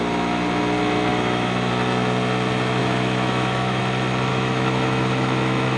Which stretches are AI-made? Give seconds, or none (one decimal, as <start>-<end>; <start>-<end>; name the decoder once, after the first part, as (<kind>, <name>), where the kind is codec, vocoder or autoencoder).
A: 1.1-1.7 (autoencoder, DAC-VAE); 2.8-3.8; 4.3-5.8